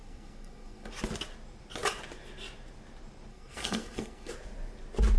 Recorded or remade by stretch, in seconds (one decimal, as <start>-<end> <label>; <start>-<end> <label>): 0.0-0.9 remade; 0.9-3.3 recorded; 3.3-4.3 remade; 4.3-5.2 recorded